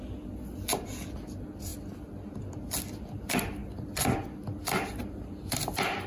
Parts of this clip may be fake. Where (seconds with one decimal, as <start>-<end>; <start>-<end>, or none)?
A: none